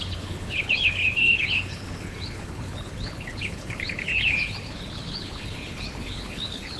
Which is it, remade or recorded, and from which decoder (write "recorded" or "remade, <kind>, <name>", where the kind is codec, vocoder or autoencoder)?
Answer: remade, codec, HILCodec